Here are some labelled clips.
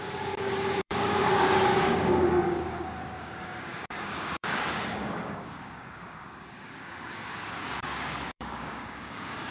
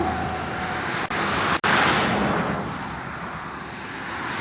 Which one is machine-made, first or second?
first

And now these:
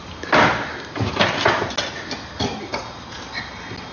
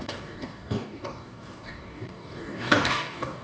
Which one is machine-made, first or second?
second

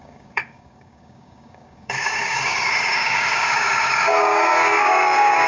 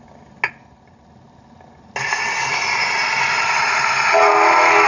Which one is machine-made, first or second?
first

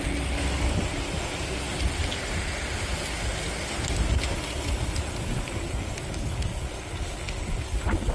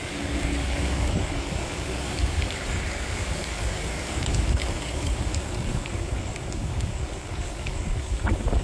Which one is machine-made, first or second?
second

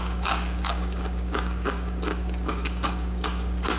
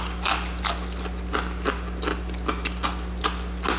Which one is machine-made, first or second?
first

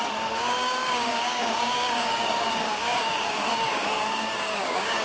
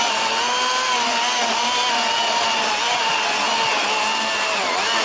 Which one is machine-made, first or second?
first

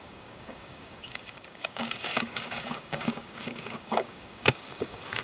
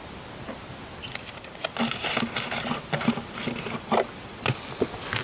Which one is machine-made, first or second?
first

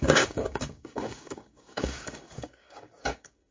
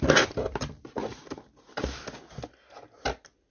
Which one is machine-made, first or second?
first